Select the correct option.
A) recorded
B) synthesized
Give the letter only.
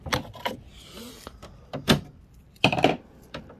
B